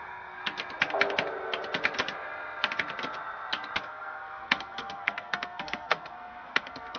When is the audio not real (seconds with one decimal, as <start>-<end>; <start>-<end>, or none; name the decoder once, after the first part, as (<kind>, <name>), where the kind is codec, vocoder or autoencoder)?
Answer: 0.0-0.4 (codec, SNAC); 3.8-7.0